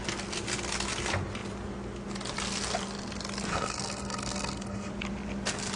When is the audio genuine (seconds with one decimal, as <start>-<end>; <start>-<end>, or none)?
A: 0.0-3.5; 4.9-5.8